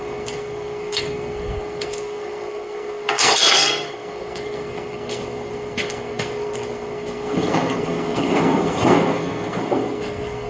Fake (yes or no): yes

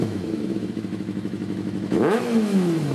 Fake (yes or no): yes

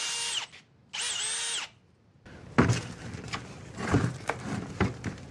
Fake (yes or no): no